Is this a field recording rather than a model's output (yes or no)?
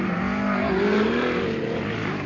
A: yes